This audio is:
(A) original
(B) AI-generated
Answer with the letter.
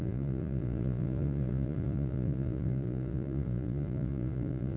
B